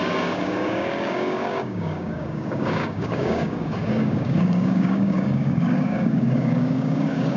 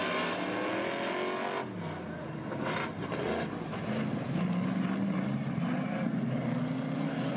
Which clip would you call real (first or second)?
second